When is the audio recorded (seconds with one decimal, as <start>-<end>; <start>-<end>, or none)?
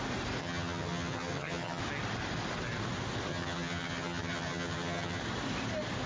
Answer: 0.0-0.4; 1.8-3.3; 5.2-6.1